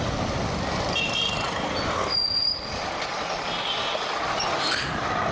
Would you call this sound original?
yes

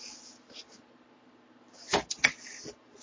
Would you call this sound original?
yes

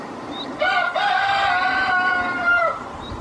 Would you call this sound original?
no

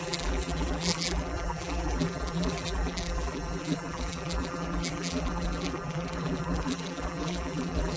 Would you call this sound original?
no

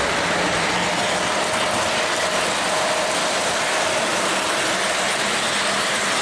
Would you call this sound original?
yes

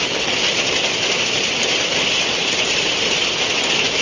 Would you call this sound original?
yes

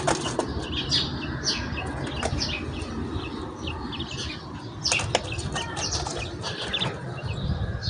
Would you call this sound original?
yes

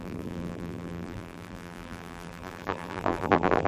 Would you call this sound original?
no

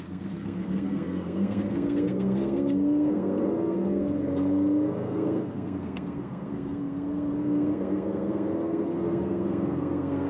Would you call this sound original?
no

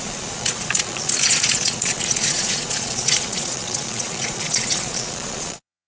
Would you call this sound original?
no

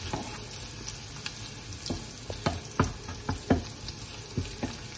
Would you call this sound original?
yes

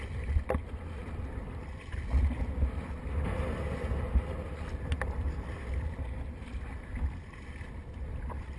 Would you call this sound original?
yes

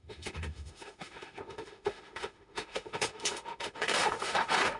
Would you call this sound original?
no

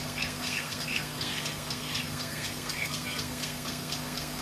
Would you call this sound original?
no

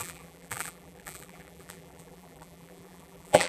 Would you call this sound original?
no